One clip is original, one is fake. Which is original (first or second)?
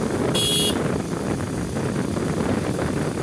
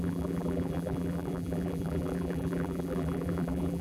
first